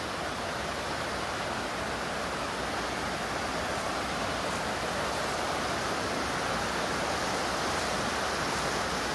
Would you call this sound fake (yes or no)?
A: no